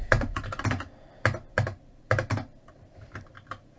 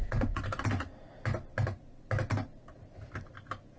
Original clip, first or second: second